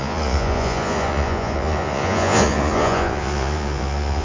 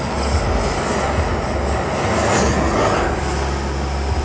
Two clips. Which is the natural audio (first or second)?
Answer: second